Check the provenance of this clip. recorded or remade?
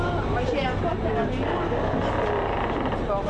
recorded